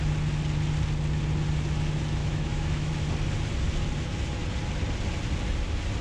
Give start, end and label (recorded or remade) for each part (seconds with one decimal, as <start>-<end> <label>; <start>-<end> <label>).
0.0-2.2 recorded; 2.2-2.9 remade; 2.9-6.0 recorded